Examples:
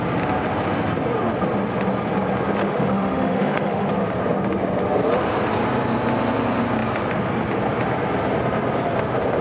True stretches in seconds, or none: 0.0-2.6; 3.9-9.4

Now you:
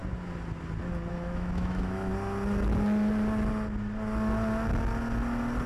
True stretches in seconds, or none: 0.0-1.1; 2.1-5.7

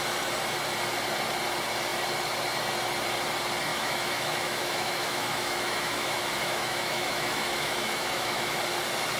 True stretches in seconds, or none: 0.0-3.7; 8.6-9.2

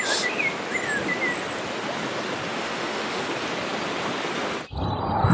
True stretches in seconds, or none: 0.0-2.5; 3.2-5.3